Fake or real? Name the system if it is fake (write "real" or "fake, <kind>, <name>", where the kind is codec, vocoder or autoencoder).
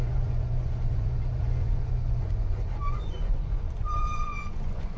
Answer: fake, vocoder, Vocos